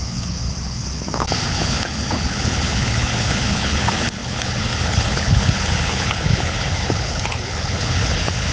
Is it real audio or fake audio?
fake